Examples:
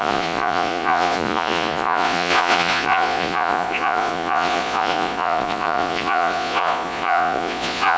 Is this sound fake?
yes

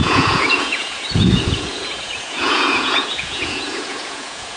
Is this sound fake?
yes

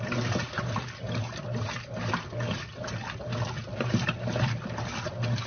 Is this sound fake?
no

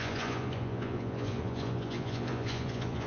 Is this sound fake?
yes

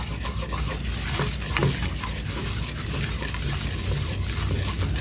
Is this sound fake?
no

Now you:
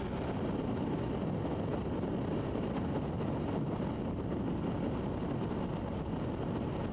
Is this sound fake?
no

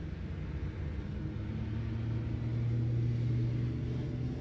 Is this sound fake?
no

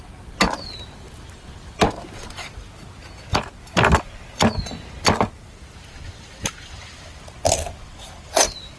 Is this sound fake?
no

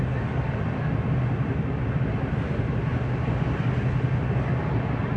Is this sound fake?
no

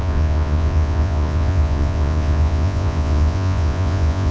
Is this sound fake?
yes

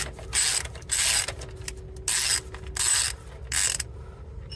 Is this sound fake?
no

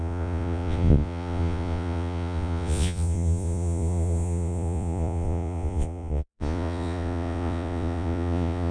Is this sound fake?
yes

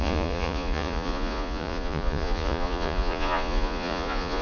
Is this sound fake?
yes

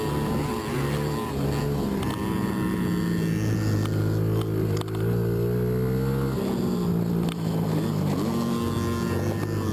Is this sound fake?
no